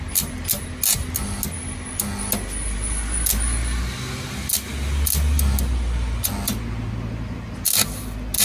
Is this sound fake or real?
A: real